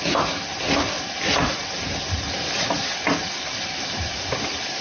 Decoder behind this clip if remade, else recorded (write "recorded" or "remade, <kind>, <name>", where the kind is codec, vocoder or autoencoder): recorded